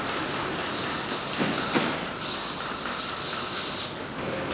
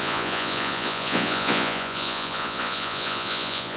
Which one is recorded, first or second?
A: first